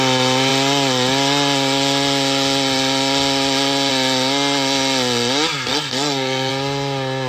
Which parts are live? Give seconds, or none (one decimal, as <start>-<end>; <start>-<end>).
0.0-5.7; 6.5-7.3